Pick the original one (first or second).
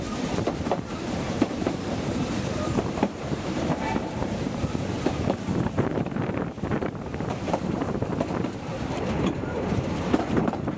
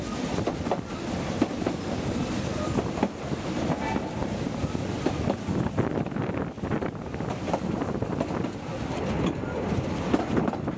second